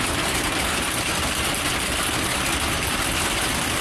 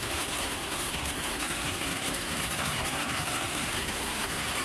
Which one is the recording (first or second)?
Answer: first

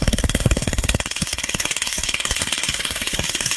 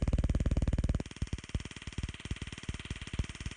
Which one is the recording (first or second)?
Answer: second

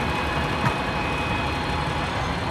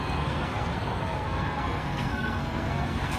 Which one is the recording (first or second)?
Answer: first